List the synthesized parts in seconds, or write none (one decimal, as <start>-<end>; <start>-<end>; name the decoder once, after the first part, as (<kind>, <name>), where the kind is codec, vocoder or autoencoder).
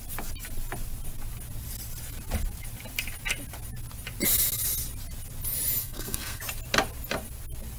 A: 5.8-6.4 (codec, SNAC)